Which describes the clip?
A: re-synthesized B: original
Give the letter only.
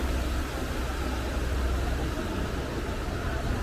B